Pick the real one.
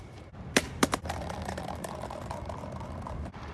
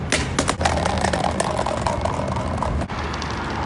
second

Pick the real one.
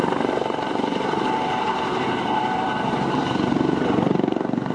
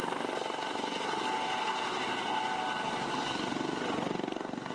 second